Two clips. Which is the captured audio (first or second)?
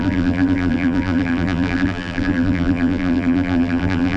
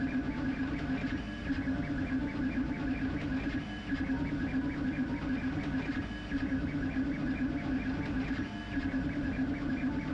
second